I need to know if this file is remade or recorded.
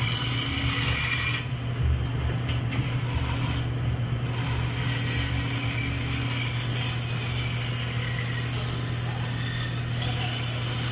recorded